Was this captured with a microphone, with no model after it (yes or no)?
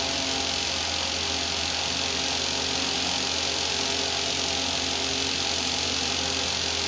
yes